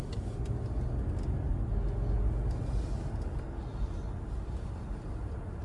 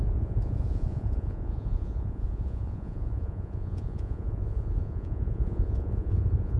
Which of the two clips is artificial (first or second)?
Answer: second